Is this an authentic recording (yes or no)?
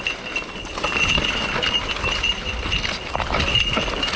yes